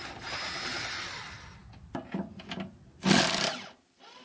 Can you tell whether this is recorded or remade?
recorded